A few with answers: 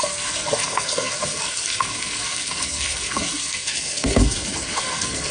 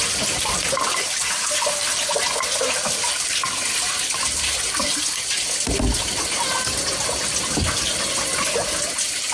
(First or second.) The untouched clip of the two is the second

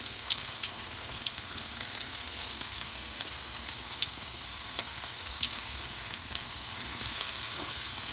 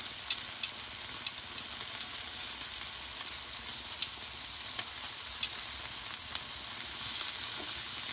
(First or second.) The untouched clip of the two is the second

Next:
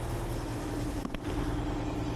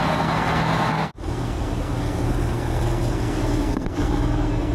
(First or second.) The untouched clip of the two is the first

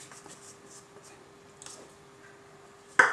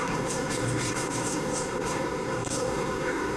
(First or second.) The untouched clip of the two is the first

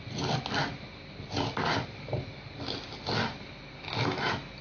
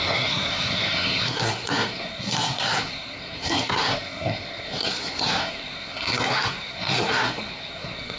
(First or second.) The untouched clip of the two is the first